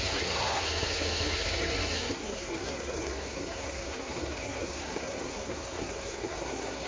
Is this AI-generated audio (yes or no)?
yes